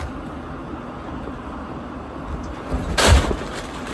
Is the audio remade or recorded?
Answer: recorded